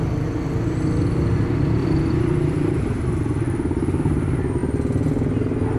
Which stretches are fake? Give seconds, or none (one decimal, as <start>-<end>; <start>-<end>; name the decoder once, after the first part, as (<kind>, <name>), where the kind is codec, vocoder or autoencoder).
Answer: 1.8-2.9 (vocoder, BigVGAN v2)